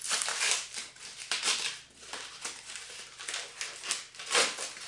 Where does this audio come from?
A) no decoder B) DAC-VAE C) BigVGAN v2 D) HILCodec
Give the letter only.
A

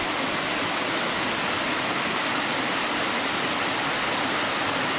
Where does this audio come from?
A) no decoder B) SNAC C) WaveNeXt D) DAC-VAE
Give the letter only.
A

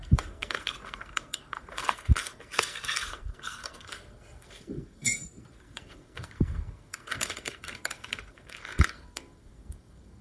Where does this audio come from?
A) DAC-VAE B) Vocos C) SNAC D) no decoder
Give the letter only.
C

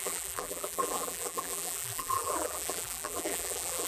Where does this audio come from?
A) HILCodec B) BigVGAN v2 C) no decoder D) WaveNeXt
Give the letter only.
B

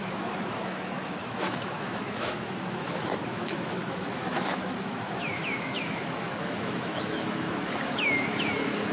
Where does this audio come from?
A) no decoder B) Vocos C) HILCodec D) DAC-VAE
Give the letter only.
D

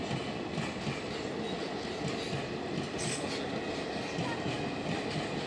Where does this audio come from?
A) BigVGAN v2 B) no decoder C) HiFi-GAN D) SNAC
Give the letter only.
B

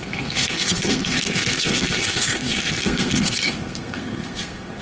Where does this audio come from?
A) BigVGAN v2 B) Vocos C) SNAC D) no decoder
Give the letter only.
C